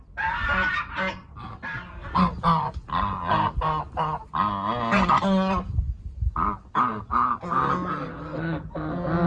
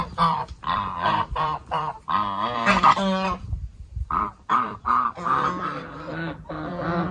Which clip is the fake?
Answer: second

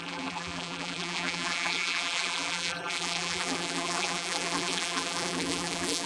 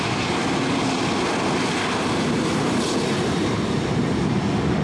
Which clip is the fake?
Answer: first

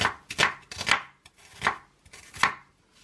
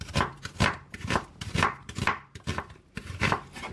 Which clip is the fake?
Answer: second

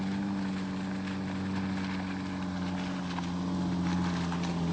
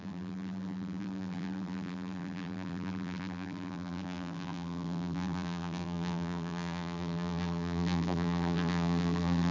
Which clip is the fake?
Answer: second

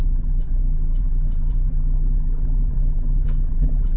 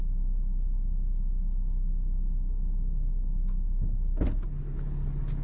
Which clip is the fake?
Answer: first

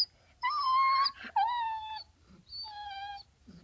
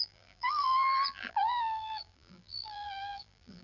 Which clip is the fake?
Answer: second